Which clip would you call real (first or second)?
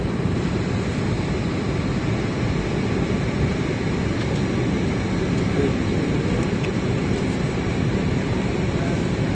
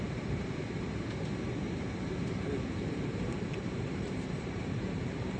first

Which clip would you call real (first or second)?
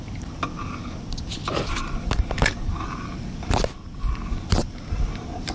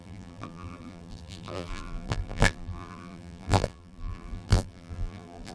first